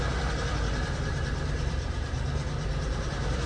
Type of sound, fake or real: fake